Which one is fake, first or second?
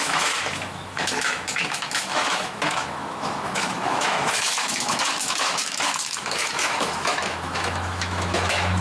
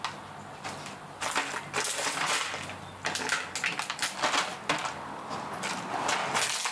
first